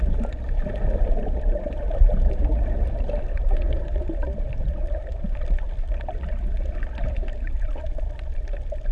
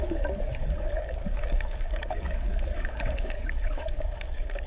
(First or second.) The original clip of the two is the first